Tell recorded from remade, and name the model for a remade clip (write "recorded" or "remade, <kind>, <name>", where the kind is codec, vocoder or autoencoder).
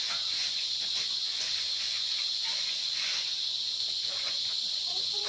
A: remade, vocoder, Vocos